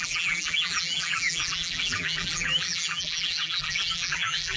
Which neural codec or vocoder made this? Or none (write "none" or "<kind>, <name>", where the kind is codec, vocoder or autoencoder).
vocoder, BigVGAN v2